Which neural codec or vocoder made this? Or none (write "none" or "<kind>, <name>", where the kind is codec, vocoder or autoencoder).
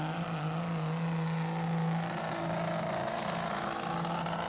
none